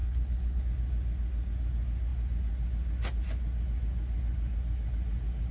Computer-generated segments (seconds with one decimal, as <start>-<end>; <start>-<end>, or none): 0.0-0.6